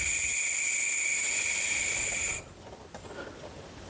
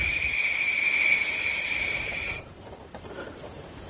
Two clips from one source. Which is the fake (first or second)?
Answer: second